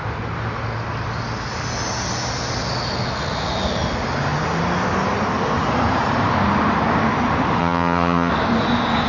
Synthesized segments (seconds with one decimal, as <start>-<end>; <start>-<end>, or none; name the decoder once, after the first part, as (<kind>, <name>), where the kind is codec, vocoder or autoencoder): 7.6-8.3 (vocoder, HiFi-GAN)